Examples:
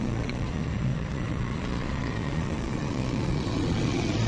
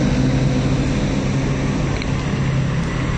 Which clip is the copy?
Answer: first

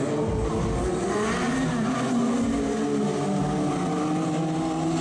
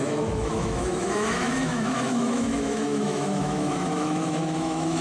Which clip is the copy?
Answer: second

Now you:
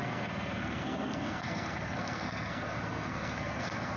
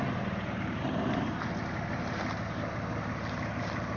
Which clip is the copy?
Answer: first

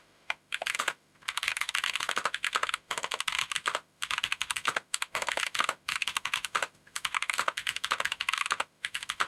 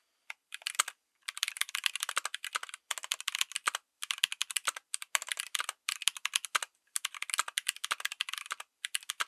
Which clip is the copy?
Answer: first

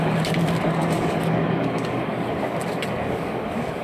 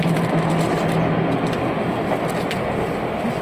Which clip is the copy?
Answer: first